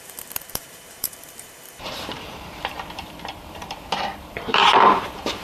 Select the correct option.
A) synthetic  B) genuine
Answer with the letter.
A